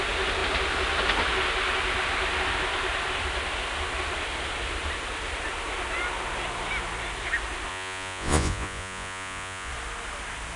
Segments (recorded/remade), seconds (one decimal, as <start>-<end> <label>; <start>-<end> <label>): 0.0-7.7 recorded; 7.7-9.7 remade; 9.7-10.6 recorded